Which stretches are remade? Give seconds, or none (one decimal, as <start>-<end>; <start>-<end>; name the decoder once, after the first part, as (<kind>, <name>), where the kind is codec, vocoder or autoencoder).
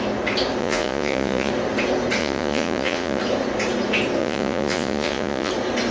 0.6-1.5 (vocoder, Vocos); 2.2-3.2; 4.2-5.5